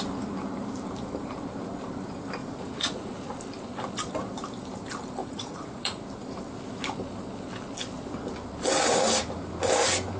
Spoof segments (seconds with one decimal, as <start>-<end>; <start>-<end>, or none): 2.4-3.1; 5.2-6.0